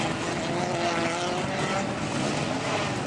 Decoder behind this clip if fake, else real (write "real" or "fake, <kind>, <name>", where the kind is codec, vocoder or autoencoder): real